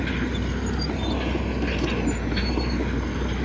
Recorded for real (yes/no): yes